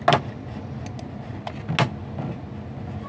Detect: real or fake real